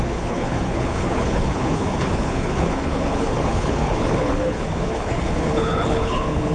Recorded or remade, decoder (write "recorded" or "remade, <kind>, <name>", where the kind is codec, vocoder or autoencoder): remade, codec, HILCodec